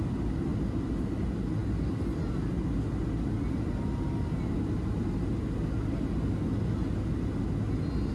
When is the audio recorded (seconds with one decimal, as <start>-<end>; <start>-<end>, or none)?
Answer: 0.0-8.1